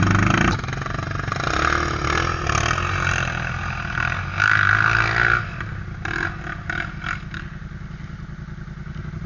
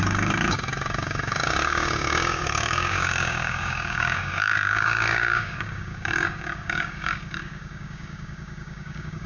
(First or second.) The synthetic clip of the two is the second